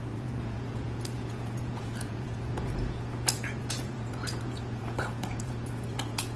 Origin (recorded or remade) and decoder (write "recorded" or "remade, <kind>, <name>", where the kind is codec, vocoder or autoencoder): remade, vocoder, Vocos